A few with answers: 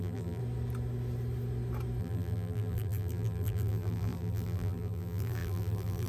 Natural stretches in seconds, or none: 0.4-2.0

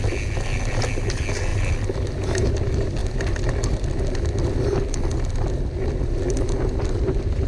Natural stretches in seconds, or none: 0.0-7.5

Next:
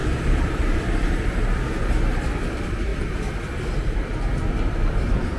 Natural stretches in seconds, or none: 2.9-4.5